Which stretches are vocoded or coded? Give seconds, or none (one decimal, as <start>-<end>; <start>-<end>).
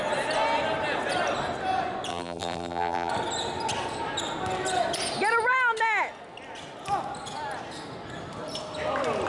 2.1-3.1